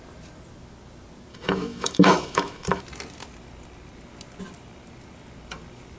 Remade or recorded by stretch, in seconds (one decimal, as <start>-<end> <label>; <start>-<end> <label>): 0.0-1.3 recorded; 1.3-2.8 remade; 2.8-6.0 recorded